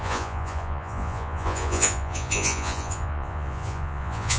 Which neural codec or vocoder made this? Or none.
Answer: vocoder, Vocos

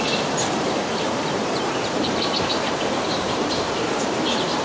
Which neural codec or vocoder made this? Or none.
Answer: vocoder, BigVGAN v2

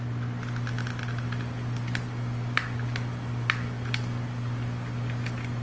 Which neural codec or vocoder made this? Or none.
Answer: none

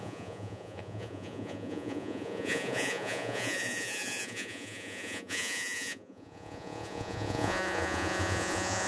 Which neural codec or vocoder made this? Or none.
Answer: vocoder, Vocos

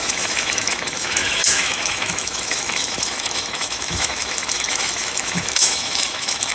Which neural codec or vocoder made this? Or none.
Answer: autoencoder, DAC-VAE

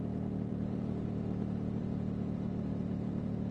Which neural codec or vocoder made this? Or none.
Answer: vocoder, BigVGAN v2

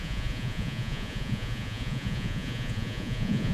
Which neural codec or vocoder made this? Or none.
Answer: vocoder, Vocos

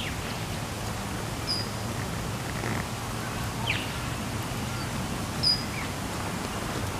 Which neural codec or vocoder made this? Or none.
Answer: none